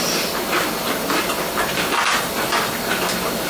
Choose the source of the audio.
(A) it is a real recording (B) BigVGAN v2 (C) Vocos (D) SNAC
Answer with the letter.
A